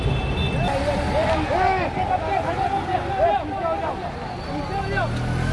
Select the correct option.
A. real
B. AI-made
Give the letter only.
A